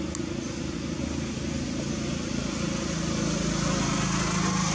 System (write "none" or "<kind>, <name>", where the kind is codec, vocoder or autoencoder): none